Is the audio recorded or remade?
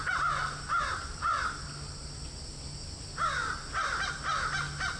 recorded